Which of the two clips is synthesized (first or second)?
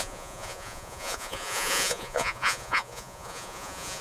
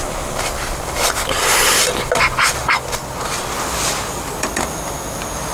first